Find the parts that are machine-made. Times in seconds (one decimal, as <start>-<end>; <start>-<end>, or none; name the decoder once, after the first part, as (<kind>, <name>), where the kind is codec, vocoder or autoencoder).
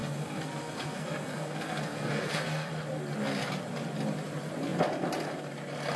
0.0-2.7 (codec, SNAC)